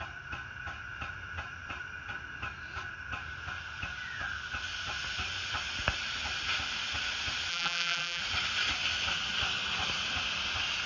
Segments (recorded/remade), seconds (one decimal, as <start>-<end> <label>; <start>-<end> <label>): 0.0-7.5 recorded; 7.5-8.2 remade; 8.2-10.9 recorded